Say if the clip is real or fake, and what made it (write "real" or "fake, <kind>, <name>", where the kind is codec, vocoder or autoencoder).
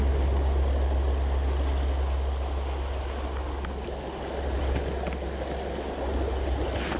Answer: real